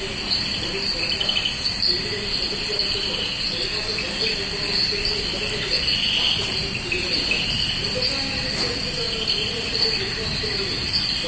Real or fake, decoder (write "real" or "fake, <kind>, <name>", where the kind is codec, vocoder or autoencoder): real